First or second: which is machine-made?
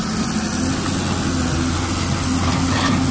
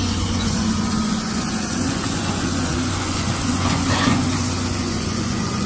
second